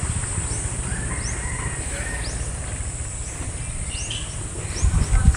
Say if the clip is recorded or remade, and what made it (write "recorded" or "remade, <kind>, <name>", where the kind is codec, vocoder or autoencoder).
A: recorded